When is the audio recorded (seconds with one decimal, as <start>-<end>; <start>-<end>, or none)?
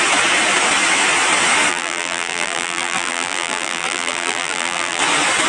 0.0-1.7; 5.0-5.5